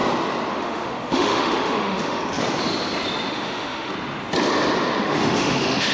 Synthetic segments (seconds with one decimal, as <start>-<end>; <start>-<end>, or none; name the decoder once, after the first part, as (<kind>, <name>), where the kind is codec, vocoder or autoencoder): 0.5-2.2 (autoencoder, DAC-VAE); 3.3-3.9; 5.0-5.9